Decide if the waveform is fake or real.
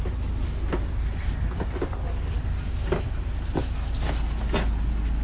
real